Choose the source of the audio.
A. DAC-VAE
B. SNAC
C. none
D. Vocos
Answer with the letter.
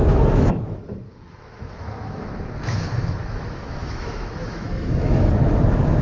A